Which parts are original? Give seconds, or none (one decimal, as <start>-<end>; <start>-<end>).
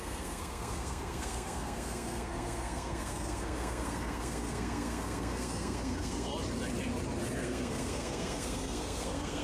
6.3-7.4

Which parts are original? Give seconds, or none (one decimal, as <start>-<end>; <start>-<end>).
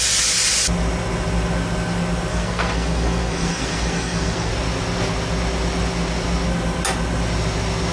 0.0-2.3; 4.5-7.9